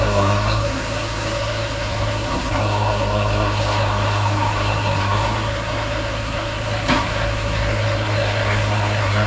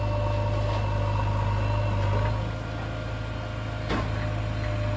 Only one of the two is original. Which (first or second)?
second